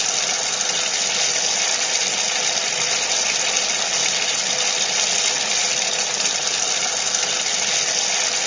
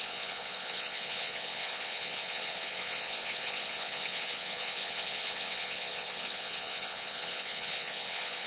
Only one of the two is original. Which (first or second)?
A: first